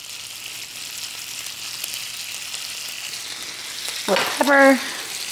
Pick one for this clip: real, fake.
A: real